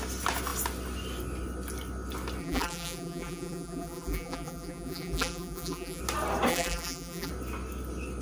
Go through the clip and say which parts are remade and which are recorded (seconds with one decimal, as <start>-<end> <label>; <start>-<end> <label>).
0.0-2.4 recorded; 2.4-6.0 remade; 6.0-6.5 recorded; 6.5-7.3 remade; 7.3-8.2 recorded